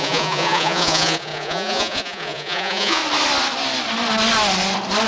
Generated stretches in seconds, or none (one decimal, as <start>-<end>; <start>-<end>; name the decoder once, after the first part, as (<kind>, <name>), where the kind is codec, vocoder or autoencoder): 0.0-3.0 (vocoder, Vocos)